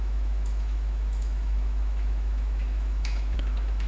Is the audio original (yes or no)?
no